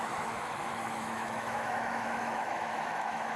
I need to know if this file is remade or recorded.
remade